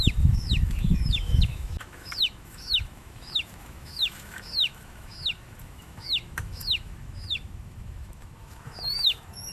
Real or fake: fake